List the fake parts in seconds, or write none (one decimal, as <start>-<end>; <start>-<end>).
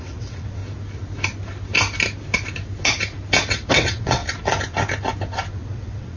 0.0-0.6; 3.7-4.2; 5.5-6.2